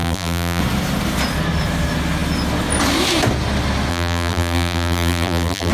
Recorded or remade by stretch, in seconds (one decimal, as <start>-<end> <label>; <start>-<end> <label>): 0.0-0.6 remade; 0.6-3.9 recorded; 3.9-5.7 remade

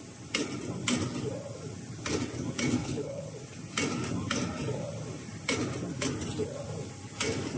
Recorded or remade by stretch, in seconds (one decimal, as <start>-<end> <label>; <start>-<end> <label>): 0.0-2.8 recorded; 2.8-3.3 remade; 3.3-7.6 recorded

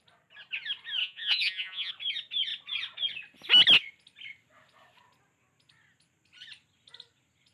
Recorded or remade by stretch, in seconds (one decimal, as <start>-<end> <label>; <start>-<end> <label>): 0.0-1.0 recorded; 1.0-1.9 remade; 1.9-7.5 recorded

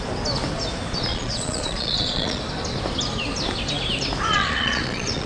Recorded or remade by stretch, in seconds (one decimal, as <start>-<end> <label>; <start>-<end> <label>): 0.0-1.1 recorded; 1.1-2.4 remade; 2.4-4.3 recorded; 4.3-5.3 remade

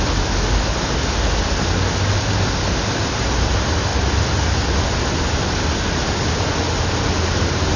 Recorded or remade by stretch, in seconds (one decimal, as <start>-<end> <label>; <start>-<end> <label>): 0.0-7.8 recorded

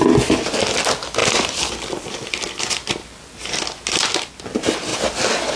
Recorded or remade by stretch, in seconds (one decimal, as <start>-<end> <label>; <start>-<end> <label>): 0.0-5.6 recorded